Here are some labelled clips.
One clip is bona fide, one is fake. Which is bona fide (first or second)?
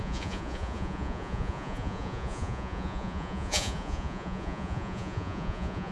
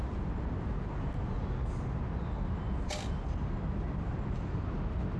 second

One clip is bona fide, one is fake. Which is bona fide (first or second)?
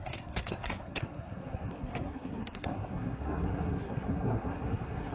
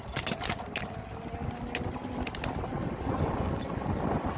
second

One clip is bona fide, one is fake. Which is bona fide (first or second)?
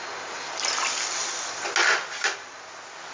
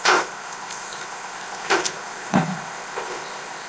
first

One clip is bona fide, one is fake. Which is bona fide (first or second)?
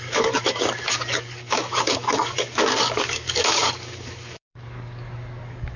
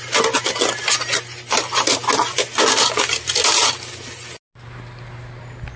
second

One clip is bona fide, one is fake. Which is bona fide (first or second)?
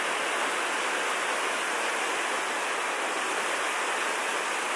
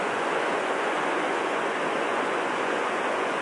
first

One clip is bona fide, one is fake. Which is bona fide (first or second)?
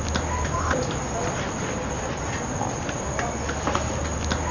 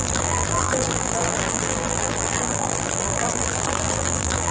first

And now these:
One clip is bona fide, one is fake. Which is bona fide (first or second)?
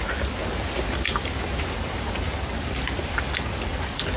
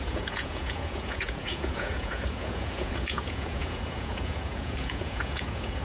first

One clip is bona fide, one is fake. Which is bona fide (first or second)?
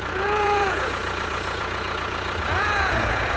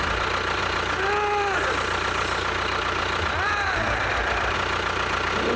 second